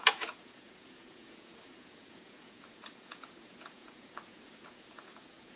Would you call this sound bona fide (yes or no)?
no